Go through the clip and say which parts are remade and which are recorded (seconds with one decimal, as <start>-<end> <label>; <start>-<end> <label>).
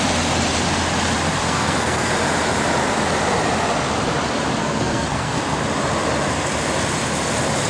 0.0-1.4 recorded; 1.4-2.1 remade; 2.1-4.6 recorded; 4.6-5.4 remade; 5.4-7.7 recorded